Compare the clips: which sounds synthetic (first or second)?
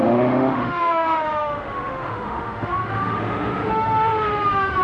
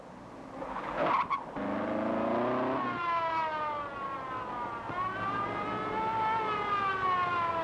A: first